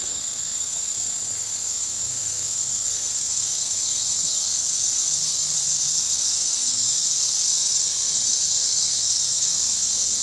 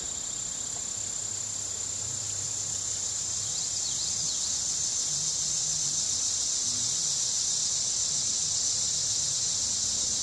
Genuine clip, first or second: second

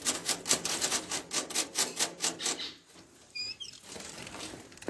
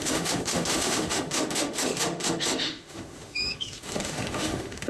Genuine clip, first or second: first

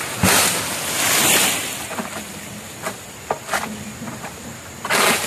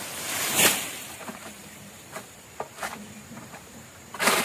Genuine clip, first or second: first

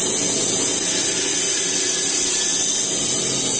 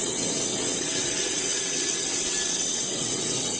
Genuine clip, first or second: first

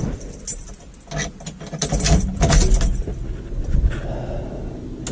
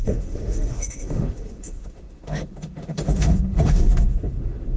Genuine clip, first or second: first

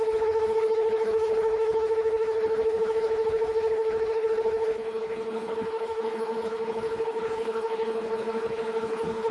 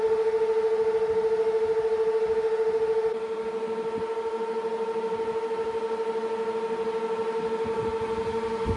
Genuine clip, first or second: second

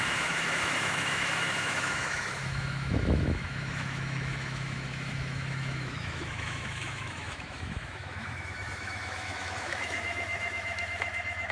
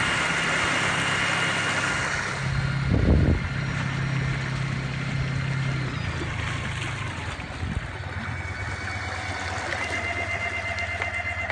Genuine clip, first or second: second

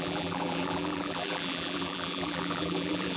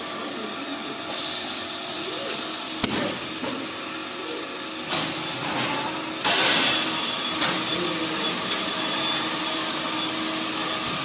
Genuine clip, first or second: second